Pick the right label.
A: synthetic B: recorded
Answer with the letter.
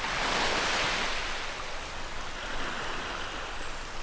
B